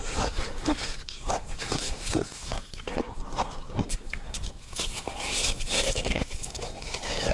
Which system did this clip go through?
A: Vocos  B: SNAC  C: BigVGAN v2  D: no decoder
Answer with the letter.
B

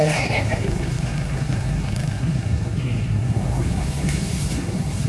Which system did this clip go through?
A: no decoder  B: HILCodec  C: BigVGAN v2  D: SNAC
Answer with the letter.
D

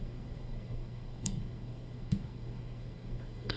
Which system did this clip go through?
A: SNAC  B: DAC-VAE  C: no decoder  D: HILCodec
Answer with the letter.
A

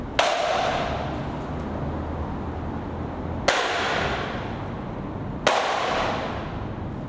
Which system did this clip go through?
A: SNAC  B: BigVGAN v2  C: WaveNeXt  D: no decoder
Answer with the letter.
D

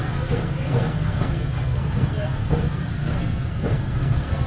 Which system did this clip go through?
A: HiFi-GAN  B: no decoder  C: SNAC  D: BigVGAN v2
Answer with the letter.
C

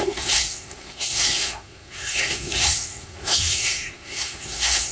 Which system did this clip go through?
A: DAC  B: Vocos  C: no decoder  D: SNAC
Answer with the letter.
D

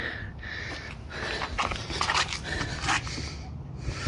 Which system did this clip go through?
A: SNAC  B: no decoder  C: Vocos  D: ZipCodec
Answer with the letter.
B